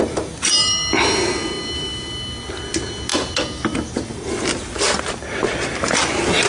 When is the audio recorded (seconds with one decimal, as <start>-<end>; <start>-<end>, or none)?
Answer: 0.0-6.5